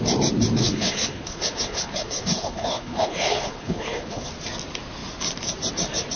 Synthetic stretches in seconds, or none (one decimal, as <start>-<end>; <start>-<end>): 0.6-4.3